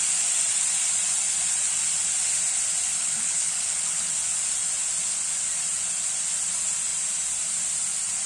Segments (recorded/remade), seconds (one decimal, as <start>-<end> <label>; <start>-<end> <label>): 0.0-3.0 recorded; 3.0-4.1 remade; 4.1-8.3 recorded